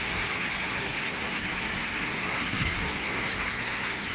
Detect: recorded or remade remade